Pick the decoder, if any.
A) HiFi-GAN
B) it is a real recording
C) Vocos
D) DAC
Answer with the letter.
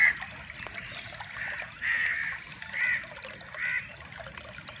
B